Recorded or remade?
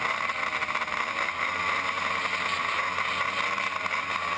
recorded